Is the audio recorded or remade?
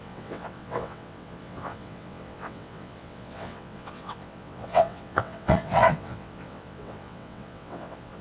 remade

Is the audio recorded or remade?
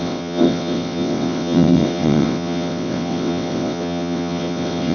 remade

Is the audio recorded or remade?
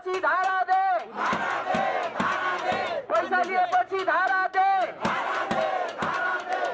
recorded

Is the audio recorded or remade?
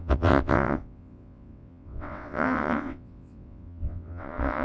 remade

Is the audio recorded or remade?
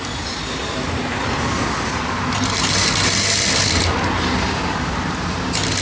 recorded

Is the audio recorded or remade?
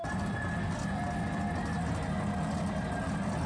recorded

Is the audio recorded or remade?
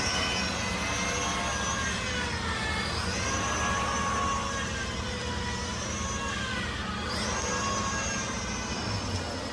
recorded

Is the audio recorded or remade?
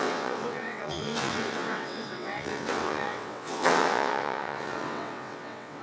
remade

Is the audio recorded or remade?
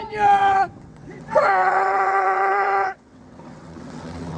remade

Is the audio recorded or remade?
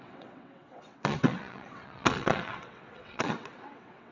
remade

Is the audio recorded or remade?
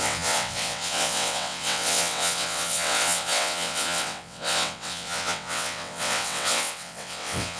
remade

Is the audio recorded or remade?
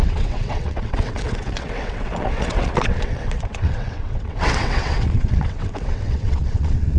remade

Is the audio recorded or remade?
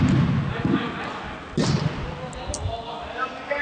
recorded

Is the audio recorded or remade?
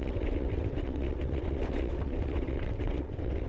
remade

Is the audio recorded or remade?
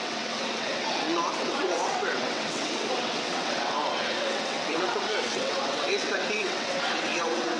remade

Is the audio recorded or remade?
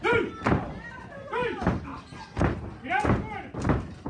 recorded